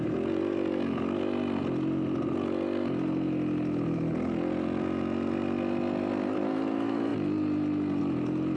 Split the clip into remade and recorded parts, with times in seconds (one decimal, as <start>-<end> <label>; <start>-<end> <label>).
0.0-8.6 recorded